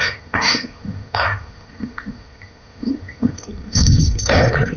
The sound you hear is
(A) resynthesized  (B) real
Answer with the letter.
A